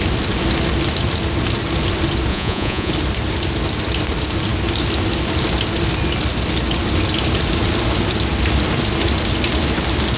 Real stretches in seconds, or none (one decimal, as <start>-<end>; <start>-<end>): 0.0-2.3; 2.9-10.2

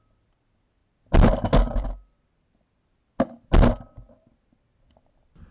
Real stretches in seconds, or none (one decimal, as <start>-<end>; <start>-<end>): 0.0-5.5

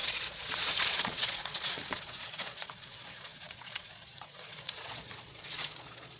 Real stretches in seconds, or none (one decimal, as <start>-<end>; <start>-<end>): none

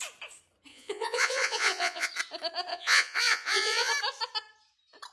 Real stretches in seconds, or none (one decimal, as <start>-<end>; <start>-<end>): 0.0-0.7; 2.1-2.7; 3.9-5.1

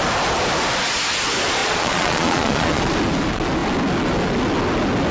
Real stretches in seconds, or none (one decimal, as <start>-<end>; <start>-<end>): 0.0-1.6; 2.8-5.1